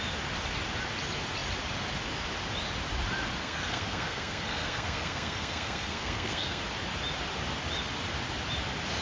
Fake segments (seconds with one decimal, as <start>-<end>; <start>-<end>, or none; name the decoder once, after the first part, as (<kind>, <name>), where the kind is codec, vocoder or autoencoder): 3.4-6.6 (codec, SNAC)